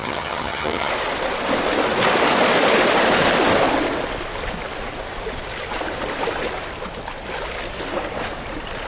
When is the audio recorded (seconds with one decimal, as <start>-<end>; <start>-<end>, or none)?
0.9-8.9